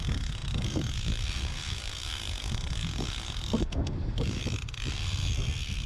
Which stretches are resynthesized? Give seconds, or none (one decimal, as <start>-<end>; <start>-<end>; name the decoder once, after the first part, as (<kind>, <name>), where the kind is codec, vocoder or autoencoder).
0.0-4.4 (codec, SNAC); 4.9-5.9